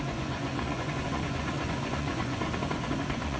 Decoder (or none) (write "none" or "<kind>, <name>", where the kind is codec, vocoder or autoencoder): vocoder, Vocos